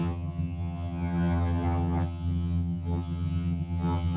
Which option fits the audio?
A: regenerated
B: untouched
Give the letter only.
A